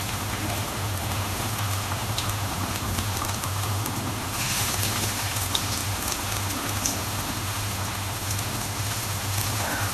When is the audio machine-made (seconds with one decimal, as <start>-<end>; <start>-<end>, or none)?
0.0-9.9